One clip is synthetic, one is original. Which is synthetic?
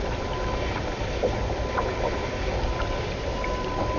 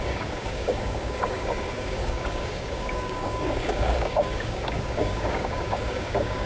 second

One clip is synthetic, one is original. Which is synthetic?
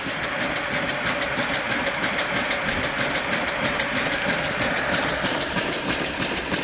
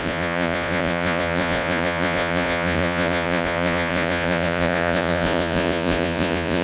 second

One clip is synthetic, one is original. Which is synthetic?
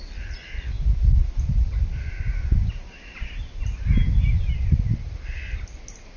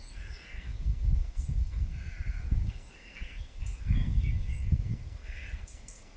second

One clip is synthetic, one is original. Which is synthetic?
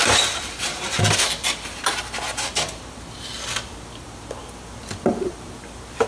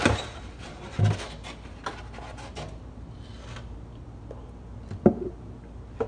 first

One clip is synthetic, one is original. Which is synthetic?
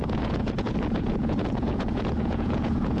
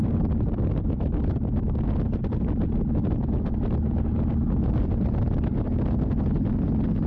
first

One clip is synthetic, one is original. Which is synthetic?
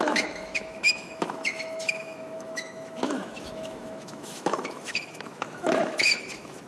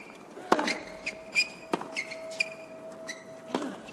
first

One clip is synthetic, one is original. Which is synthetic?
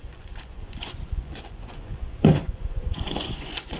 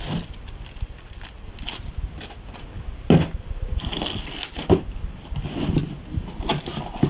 first